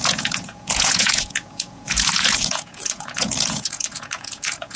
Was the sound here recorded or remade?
remade